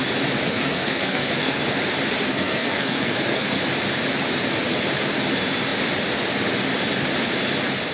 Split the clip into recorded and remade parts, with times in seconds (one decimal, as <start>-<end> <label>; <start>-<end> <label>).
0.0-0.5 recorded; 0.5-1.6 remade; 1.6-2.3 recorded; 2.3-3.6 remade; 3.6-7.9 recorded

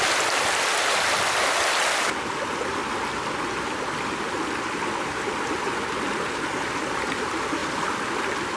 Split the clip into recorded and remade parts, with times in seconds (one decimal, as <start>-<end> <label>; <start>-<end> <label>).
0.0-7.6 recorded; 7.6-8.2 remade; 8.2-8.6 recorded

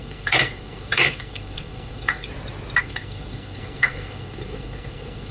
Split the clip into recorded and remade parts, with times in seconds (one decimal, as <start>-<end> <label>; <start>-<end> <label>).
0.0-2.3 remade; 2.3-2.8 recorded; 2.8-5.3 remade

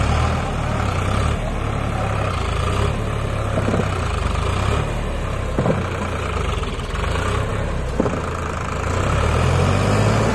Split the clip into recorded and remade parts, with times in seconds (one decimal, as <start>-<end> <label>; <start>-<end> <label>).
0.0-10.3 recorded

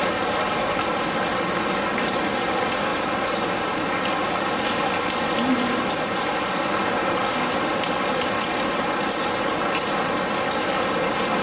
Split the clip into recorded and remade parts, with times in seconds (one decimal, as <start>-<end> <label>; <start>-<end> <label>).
0.0-11.4 recorded

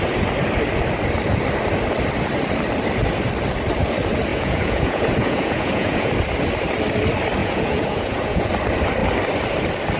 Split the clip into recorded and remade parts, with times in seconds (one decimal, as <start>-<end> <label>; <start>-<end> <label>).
0.0-4.3 recorded; 4.3-6.1 remade; 6.1-7.4 recorded; 7.4-8.5 remade; 8.5-10.0 recorded